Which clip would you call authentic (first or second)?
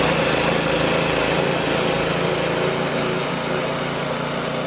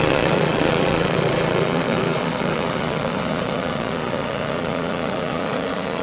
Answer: first